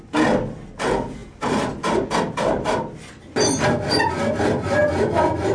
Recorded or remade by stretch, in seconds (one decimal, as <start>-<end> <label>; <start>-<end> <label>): 0.0-5.5 recorded